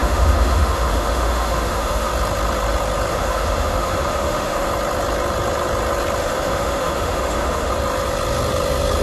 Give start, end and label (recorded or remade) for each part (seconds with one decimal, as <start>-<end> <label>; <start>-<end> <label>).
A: 0.0-2.1 remade; 2.1-3.1 recorded; 3.1-4.7 remade; 4.7-6.2 recorded; 6.2-7.7 remade; 7.7-9.0 recorded